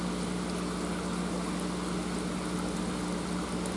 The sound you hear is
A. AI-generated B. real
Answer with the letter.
B